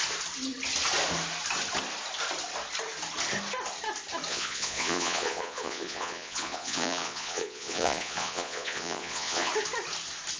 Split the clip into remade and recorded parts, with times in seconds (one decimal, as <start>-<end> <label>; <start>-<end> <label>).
0.0-4.3 recorded; 4.3-9.5 remade; 9.5-10.4 recorded